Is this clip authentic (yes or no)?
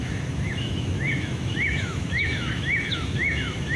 no